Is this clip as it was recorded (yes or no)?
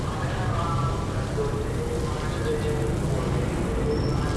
yes